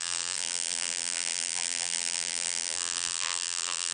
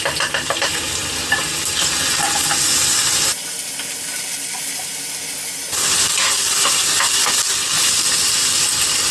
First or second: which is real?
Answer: second